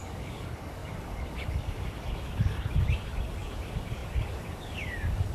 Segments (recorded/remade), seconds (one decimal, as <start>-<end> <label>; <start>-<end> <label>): 0.0-5.3 remade